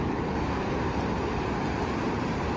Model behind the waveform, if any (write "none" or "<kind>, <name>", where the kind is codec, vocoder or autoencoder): none